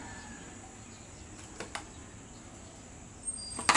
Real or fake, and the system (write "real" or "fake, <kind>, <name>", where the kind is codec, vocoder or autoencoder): real